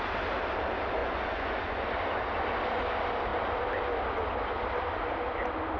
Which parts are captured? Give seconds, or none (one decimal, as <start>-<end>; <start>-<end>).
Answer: 0.0-1.0; 1.8-5.8